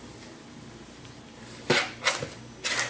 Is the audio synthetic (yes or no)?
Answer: no